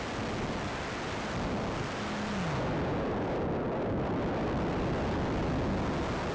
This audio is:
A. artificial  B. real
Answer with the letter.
B